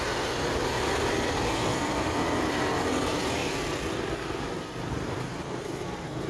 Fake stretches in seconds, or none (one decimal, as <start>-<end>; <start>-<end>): 0.0-1.7; 3.0-3.4; 4.9-6.3